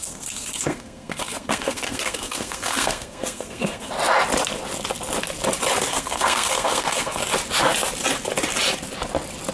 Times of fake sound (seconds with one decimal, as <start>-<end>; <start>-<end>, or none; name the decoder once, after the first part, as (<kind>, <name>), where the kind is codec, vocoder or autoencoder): 0.0-3.9 (codec, SNAC); 5.9-7.2